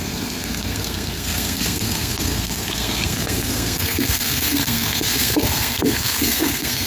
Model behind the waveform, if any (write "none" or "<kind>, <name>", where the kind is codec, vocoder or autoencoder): codec, SNAC